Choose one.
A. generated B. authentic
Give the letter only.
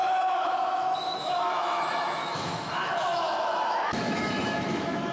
A